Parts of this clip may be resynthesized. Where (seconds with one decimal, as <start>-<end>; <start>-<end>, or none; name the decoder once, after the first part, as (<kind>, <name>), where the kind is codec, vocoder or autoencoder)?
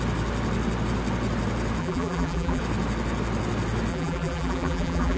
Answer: 1.8-2.6 (vocoder, BigVGAN v2); 3.9-5.2